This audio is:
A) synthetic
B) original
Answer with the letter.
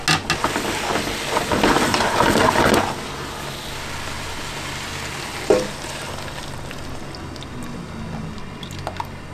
B